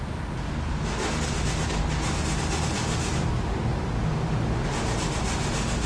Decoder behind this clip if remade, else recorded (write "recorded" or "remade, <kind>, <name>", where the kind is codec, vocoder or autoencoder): recorded